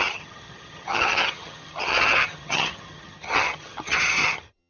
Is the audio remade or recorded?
remade